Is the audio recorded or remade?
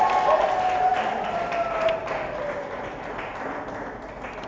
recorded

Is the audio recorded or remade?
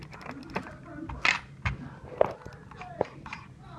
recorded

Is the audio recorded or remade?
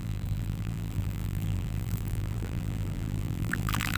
remade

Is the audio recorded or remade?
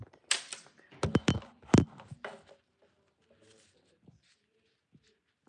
recorded